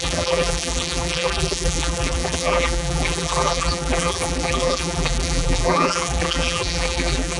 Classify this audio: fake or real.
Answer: fake